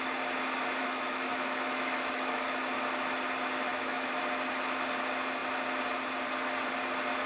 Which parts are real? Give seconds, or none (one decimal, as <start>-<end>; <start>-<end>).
0.0-0.8; 2.6-3.7; 4.2-7.3